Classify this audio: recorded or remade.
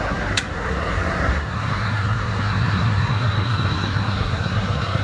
remade